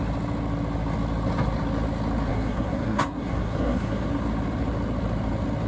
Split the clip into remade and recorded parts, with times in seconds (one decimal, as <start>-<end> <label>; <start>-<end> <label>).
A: 0.0-2.3 recorded; 2.3-4.1 remade; 4.1-5.7 recorded